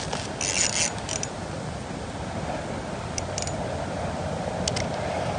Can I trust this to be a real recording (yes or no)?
yes